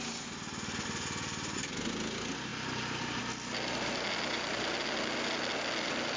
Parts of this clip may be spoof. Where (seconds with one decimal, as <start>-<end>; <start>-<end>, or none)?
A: none